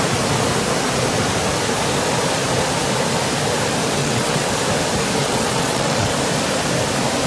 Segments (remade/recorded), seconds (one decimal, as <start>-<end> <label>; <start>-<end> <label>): 0.0-4.0 recorded; 4.0-4.5 remade; 4.5-5.2 recorded; 5.2-6.1 remade; 6.1-7.3 recorded